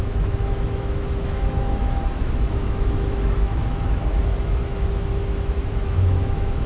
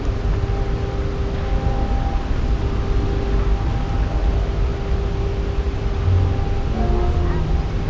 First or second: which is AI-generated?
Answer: first